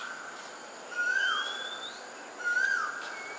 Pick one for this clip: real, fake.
real